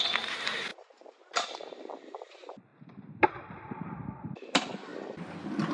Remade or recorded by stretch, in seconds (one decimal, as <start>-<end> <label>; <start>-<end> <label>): 0.0-2.7 remade; 2.7-3.3 recorded; 3.3-4.9 remade; 4.9-5.7 recorded